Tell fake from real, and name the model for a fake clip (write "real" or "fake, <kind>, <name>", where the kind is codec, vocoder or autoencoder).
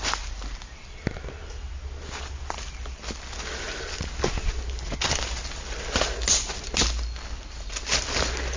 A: real